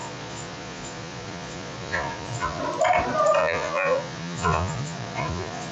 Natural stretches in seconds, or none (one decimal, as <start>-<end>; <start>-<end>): 2.6-3.4